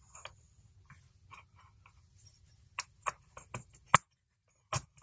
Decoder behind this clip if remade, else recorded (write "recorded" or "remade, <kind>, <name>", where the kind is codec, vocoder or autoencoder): recorded